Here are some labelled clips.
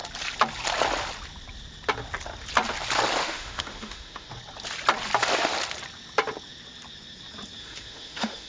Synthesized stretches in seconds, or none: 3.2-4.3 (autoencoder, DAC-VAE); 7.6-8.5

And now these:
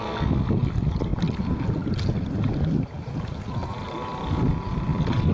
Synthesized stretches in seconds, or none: none

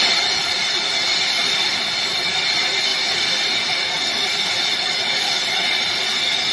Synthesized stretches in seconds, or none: none

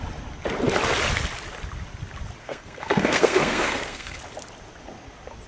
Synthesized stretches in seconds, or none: 2.4-4.2 (codec, SNAC)

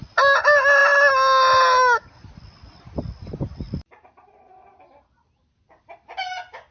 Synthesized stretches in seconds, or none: none

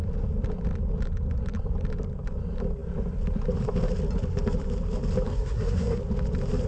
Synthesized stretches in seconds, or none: 5.3-6.0 (codec, SNAC)

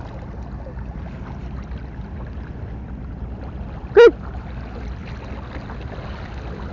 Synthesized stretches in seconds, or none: none

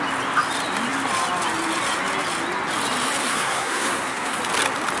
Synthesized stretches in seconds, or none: 3.2-4.4 (codec, SNAC)